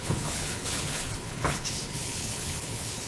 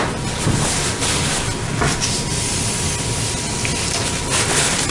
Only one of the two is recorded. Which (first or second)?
second